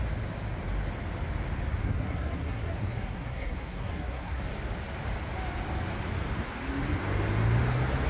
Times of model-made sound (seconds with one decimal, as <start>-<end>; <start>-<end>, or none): 1.8-4.4